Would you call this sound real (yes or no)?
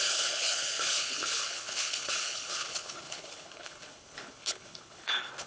no